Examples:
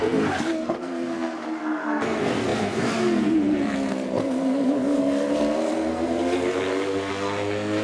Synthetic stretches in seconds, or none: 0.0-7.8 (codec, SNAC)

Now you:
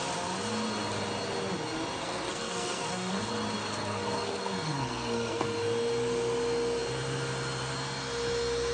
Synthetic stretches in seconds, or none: 2.0-3.3 (codec, SNAC); 3.7-5.4